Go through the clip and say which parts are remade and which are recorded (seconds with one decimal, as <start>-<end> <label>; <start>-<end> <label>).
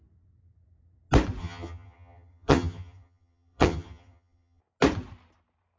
0.0-1.4 recorded; 1.4-4.6 remade; 4.6-5.8 recorded